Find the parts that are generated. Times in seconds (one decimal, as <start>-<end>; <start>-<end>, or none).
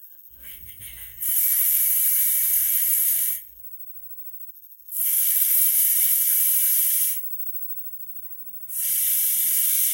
0.0-1.8; 2.5-3.6; 4.5-6.3; 9.5-9.9